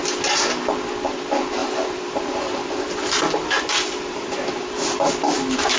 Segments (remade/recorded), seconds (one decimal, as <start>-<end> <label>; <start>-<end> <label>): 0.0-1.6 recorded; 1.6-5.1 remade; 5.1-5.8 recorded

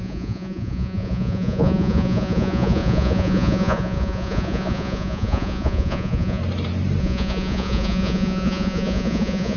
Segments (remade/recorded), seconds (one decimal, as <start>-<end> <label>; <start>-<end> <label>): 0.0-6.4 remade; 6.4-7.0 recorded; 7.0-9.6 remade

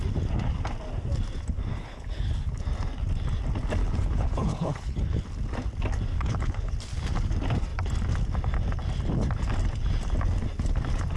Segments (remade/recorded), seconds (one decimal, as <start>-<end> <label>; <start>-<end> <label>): 0.0-1.7 recorded; 1.7-2.5 remade; 2.5-3.8 recorded; 3.8-5.2 remade; 5.2-6.1 recorded; 6.1-6.7 remade; 6.7-11.2 recorded

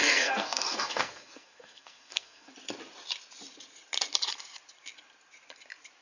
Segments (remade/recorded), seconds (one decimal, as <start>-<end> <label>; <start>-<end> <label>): 0.0-2.5 remade; 2.5-6.0 recorded